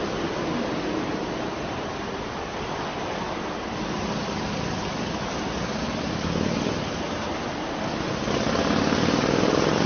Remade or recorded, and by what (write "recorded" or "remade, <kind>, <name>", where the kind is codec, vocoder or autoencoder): recorded